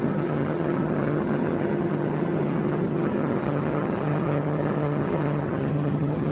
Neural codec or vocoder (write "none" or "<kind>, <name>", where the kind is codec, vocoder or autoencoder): vocoder, HiFi-GAN